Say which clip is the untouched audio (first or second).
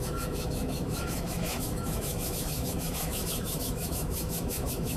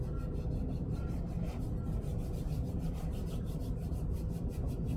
second